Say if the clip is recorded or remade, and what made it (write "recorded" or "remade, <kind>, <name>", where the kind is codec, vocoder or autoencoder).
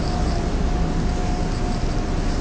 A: recorded